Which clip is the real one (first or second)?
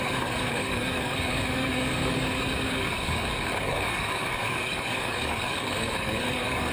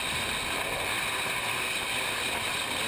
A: second